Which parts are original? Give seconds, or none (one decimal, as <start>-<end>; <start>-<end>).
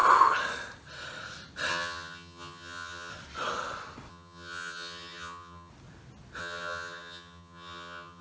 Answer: 0.0-1.7; 3.1-4.1; 5.7-6.4